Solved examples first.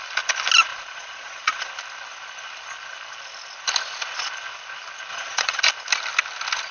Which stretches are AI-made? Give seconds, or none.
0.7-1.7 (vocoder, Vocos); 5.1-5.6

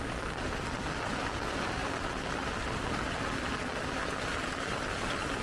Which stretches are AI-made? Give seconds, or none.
none

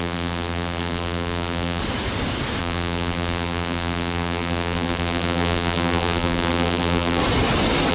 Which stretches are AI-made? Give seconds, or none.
0.0-1.8 (vocoder, BigVGAN v2); 2.6-7.2

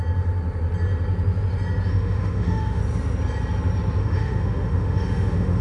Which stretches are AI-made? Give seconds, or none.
1.9-2.8 (autoencoder, DAC-VAE); 4.0-5.6

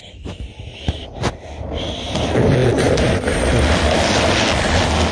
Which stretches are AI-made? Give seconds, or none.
none

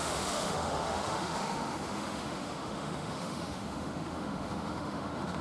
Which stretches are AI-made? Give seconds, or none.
0.0-5.4 (autoencoder, DAC-VAE)